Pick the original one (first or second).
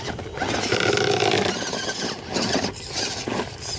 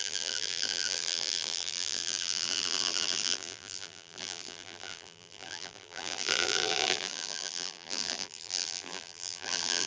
first